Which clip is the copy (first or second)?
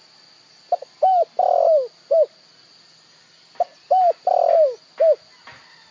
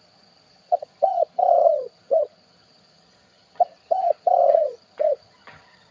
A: second